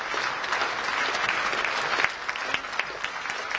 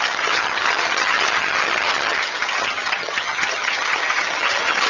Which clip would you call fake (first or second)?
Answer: second